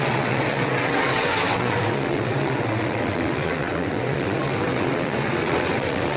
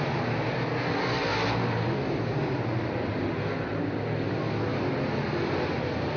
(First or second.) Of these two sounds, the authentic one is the second